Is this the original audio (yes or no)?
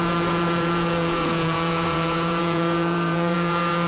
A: no